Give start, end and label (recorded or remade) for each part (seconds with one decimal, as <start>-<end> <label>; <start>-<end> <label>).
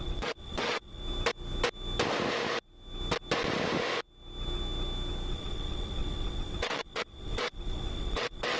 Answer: 0.0-1.0 remade; 1.0-5.3 recorded; 5.3-8.6 remade